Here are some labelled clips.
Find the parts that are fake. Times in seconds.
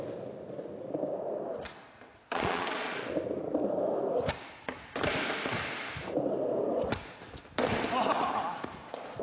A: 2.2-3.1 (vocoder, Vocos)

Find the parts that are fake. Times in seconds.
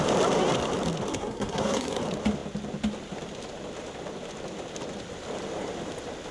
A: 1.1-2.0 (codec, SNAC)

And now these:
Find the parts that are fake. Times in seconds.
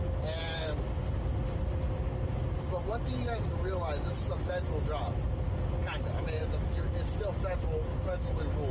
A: none